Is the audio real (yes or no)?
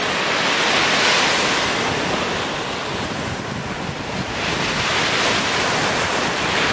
yes